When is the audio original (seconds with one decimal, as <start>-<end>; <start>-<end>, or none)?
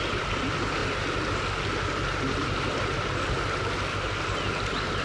0.0-5.0